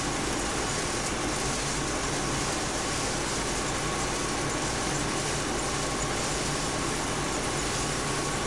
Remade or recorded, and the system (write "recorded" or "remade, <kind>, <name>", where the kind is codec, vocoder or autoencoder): recorded